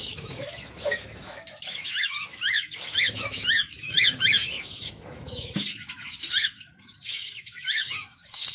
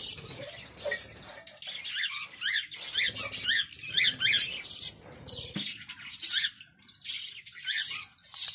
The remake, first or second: first